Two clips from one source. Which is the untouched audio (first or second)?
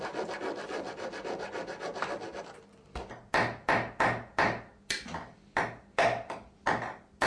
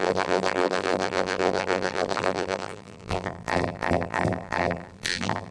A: first